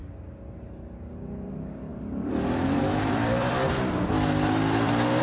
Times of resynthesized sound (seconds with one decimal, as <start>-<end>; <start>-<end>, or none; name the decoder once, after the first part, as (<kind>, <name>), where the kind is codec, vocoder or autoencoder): 1.9-5.2 (vocoder, BigVGAN v2)